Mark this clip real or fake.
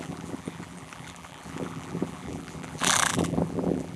fake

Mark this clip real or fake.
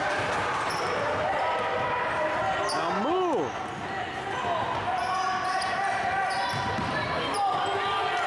real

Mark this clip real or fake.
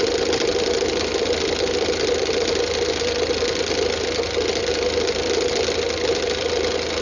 real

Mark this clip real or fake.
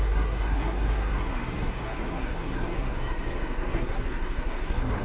fake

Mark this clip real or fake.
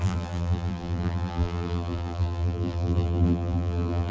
fake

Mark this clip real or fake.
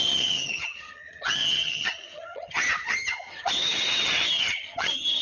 fake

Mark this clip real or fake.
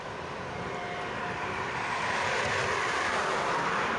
real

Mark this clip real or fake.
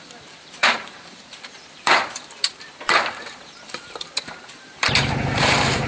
fake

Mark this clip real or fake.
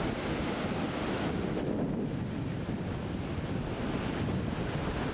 real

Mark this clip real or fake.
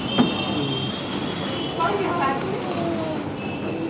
real